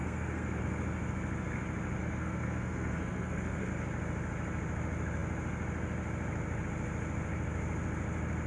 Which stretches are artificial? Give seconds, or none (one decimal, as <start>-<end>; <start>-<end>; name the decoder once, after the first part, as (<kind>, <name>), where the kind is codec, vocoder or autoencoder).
0.0-0.6 (codec, SNAC); 2.0-3.7